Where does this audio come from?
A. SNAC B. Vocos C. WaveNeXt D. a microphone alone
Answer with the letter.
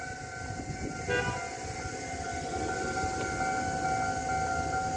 D